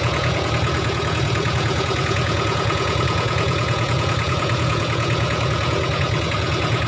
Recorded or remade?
remade